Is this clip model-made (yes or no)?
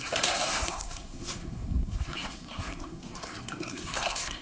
yes